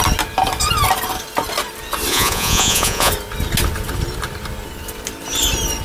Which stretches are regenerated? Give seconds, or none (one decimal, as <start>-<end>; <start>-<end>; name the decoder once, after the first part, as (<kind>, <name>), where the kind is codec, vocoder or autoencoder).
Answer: 2.1-3.1 (vocoder, Vocos)